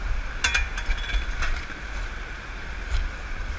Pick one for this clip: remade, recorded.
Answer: recorded